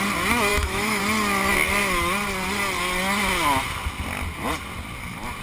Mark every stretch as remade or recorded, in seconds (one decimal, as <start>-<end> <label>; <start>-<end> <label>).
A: 0.0-0.5 recorded; 0.5-1.0 remade; 1.0-5.4 recorded